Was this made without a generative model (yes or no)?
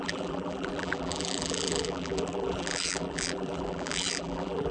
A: no